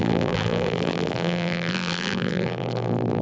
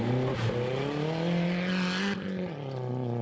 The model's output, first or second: first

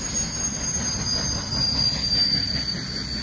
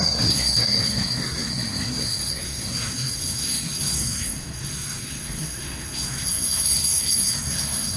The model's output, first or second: second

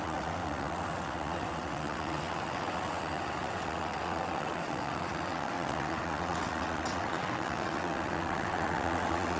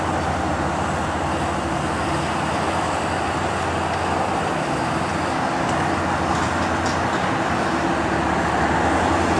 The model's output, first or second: first